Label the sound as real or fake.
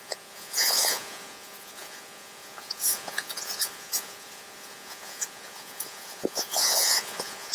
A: fake